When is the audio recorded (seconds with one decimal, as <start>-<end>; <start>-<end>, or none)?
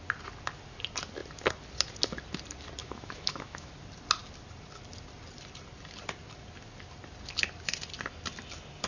0.0-2.8; 3.7-8.9